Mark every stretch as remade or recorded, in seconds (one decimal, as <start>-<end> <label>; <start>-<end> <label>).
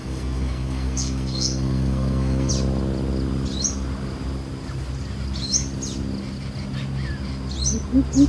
0.0-2.5 remade; 2.5-8.3 recorded